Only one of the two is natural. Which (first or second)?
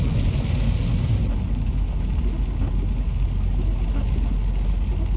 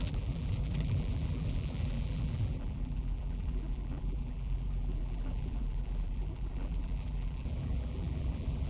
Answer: first